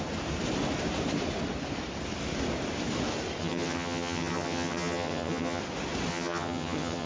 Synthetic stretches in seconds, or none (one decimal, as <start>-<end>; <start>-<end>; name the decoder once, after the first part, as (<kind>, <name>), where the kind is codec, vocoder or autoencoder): 3.4-5.6 (vocoder, HiFi-GAN); 6.1-7.1

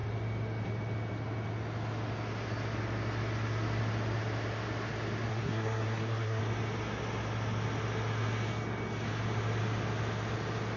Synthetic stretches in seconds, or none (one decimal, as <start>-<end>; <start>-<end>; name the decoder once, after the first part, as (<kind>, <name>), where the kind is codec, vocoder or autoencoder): 5.3-6.4 (codec, SNAC)

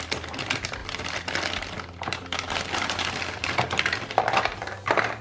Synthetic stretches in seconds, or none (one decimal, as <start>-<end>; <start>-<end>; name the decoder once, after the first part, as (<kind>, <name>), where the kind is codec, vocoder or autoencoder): 0.0-5.2 (vocoder, BigVGAN v2)

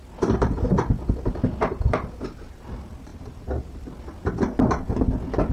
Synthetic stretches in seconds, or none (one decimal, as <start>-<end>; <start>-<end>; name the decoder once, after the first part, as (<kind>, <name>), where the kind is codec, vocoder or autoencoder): 3.1-3.8 (vocoder, BigVGAN v2)

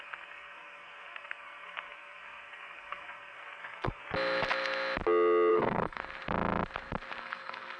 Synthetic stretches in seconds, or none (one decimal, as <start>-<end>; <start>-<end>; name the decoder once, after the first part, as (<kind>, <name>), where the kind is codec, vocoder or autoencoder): 0.0-4.0 (codec, SNAC); 5.5-6.0; 7.2-7.8